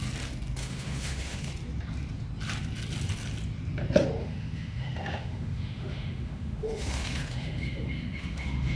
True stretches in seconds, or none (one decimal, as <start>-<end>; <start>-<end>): 0.0-0.6; 1.5-4.2

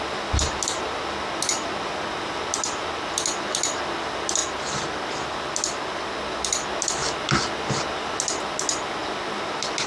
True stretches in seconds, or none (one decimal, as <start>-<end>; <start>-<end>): 0.0-9.9